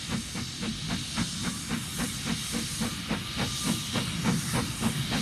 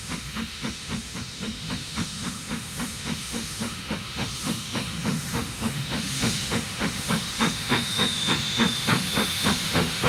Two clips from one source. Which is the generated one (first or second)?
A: second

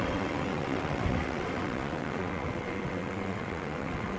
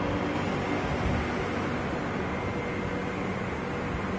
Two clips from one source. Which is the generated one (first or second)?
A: first